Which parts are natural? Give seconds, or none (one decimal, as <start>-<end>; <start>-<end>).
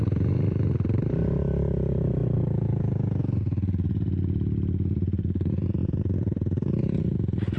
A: 0.0-7.6